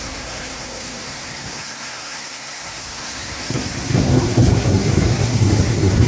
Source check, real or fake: fake